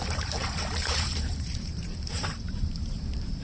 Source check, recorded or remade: remade